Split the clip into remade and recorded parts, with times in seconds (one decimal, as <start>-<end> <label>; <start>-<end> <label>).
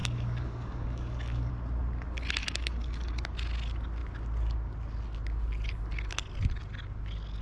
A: 0.0-1.5 remade; 1.5-2.4 recorded; 2.4-3.2 remade; 3.2-7.4 recorded